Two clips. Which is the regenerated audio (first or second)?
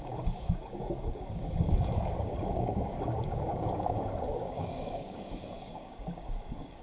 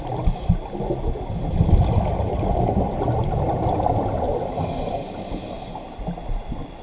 first